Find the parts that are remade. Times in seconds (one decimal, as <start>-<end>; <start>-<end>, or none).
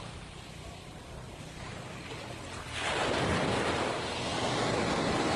none